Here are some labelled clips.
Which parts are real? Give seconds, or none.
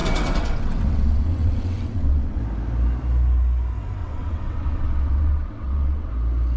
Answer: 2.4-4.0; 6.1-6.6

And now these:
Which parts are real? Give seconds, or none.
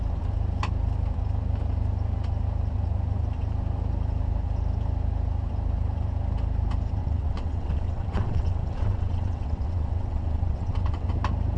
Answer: 0.0-7.0; 11.1-11.6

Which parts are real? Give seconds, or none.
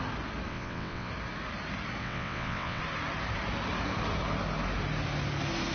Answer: 0.0-0.5; 1.1-2.0; 2.8-5.7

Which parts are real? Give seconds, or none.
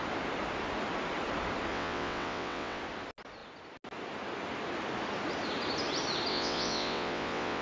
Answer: 0.0-1.7; 2.8-6.3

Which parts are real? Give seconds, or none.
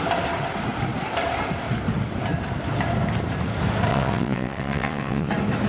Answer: 0.0-3.9; 5.3-5.7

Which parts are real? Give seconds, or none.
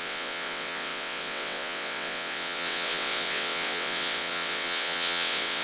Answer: none